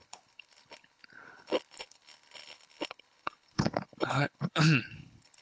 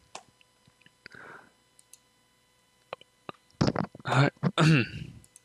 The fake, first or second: first